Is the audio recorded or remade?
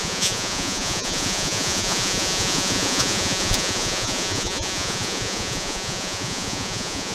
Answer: remade